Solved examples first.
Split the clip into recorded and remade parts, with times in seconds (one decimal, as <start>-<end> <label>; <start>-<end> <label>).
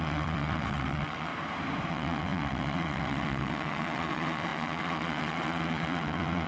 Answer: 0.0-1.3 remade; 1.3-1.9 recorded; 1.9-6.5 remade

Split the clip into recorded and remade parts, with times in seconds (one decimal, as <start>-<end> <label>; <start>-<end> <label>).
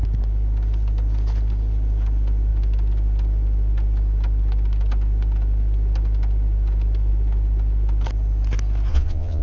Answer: 0.0-8.9 recorded; 8.9-9.4 remade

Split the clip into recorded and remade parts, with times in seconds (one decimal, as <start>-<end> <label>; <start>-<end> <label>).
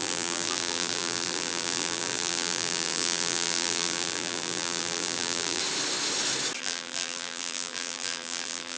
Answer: 0.0-5.6 remade; 5.6-6.6 recorded; 6.6-8.8 remade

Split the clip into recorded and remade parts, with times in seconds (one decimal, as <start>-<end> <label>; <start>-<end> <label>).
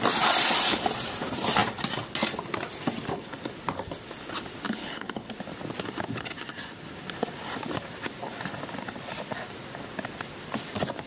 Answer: 0.0-4.8 recorded; 4.8-5.3 remade; 5.3-11.1 recorded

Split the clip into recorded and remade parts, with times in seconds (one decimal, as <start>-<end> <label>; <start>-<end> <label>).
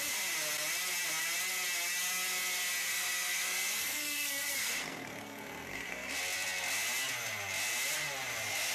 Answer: 0.0-2.8 recorded; 2.8-6.1 remade; 6.1-8.7 recorded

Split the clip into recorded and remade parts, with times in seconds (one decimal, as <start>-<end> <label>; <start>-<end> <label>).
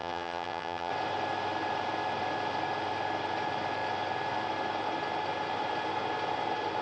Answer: 0.0-0.9 remade; 0.9-6.8 recorded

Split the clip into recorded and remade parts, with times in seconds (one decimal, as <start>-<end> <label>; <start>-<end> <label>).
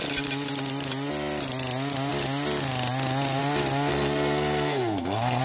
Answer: 0.0-3.9 recorded; 3.9-5.4 remade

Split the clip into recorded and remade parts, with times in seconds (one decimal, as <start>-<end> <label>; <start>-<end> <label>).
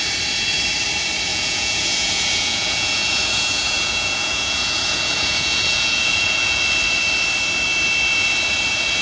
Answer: 0.0-1.3 recorded; 1.3-6.6 remade; 6.6-9.0 recorded